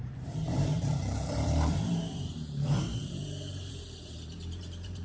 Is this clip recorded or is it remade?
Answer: remade